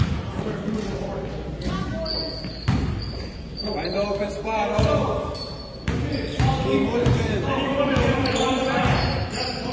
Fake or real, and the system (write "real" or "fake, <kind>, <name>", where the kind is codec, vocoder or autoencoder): fake, vocoder, BigVGAN v2